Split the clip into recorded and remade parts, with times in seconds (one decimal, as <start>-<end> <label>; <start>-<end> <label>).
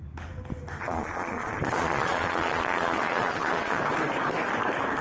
0.0-0.8 recorded; 0.8-3.8 remade; 3.8-5.0 recorded